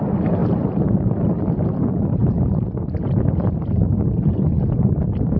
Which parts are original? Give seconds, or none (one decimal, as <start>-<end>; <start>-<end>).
0.0-0.4; 1.0-2.2; 4.5-5.4